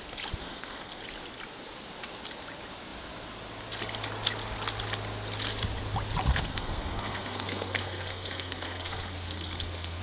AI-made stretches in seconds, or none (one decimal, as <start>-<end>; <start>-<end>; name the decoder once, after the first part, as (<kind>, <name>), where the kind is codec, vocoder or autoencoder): 0.4-1.0 (codec, SNAC); 6.3-10.0